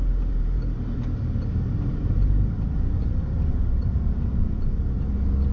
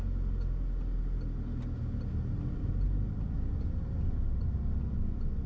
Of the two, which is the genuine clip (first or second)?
second